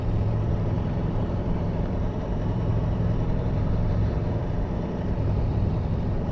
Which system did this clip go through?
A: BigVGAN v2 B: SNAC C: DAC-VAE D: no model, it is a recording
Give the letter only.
A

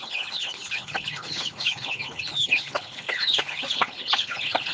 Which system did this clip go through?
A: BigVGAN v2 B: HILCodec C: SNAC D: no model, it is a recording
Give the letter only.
B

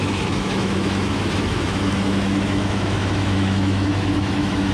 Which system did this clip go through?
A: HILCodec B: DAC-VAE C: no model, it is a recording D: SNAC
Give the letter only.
B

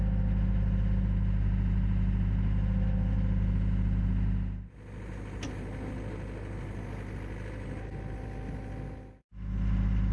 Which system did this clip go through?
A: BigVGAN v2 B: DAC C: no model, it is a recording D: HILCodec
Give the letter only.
C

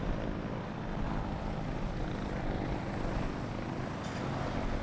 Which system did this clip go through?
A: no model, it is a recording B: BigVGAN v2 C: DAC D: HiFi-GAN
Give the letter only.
A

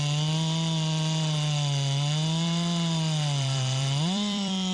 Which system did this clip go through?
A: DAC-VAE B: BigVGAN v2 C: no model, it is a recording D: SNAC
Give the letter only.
B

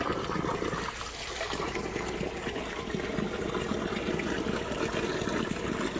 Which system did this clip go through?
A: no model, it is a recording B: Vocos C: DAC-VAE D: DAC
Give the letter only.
A